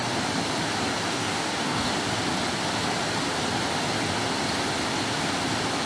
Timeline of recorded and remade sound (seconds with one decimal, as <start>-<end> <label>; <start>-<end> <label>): 0.0-1.1 recorded; 1.1-1.9 remade; 1.9-5.9 recorded